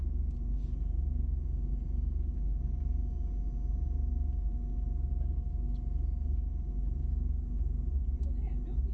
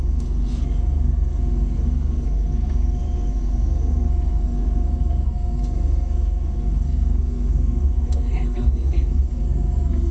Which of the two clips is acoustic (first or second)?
first